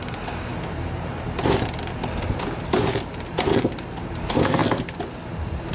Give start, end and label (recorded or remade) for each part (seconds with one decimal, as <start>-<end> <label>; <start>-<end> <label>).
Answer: 0.0-4.6 remade; 4.6-5.7 recorded